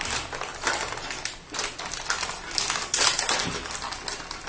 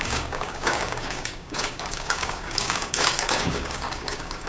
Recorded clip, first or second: first